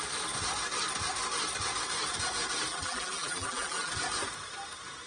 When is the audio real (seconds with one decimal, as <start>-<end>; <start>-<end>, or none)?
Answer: 0.0-2.7; 3.9-5.1